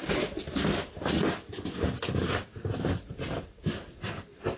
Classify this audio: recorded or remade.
recorded